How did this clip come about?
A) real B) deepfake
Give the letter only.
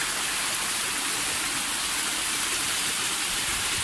A